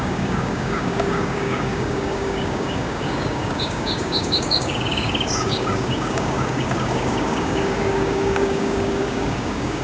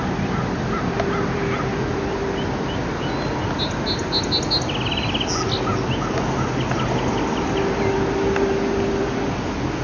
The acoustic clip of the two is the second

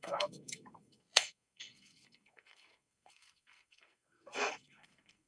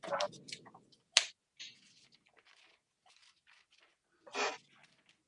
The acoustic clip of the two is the second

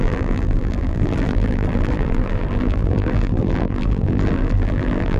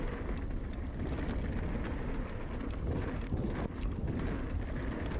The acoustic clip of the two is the second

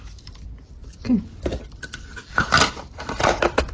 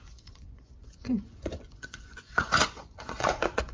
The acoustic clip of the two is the first